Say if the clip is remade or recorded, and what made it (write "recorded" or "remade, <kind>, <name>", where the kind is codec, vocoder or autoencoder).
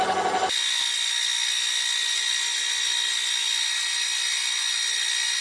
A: recorded